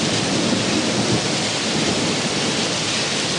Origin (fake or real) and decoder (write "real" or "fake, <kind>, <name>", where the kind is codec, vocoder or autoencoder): real